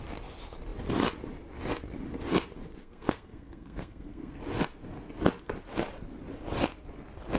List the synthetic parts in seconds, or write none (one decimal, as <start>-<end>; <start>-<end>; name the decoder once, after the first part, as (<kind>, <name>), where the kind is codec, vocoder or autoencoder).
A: 2.8-4.4 (codec, SNAC)